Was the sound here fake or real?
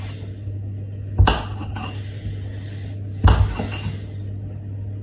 real